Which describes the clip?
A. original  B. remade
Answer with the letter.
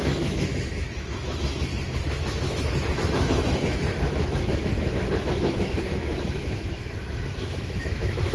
B